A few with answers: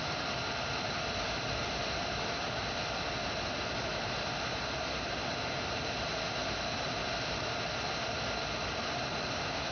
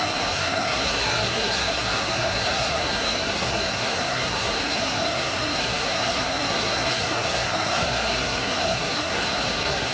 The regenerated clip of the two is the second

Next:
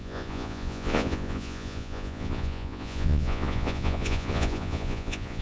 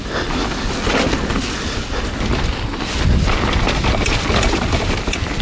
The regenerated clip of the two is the first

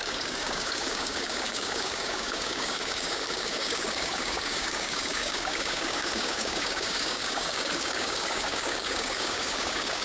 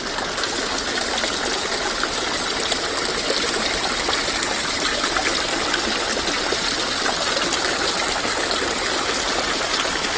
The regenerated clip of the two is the first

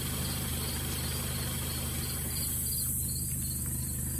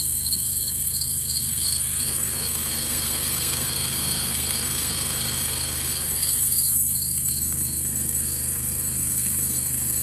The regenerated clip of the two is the second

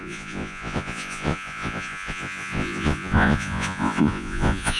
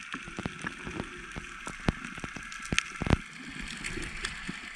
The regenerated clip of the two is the first